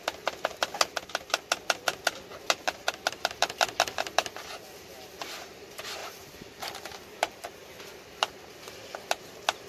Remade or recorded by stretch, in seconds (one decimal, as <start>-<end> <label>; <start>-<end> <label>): 0.0-2.3 recorded; 2.3-4.3 remade; 4.3-6.0 recorded; 6.0-7.8 remade; 7.8-9.7 recorded